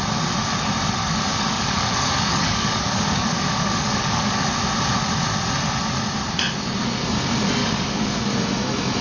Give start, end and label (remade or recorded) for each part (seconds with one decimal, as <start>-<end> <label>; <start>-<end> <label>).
0.0-1.0 recorded; 1.0-4.3 remade; 4.3-7.6 recorded; 7.6-8.4 remade; 8.4-9.0 recorded